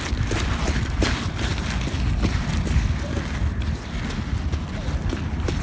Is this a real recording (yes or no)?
yes